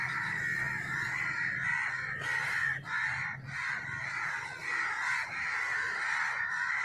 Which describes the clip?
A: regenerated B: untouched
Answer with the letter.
B